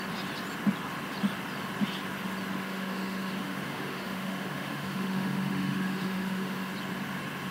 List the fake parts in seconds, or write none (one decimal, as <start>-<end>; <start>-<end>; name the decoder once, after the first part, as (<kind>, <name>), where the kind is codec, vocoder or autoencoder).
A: 2.6-6.7 (autoencoder, DAC-VAE)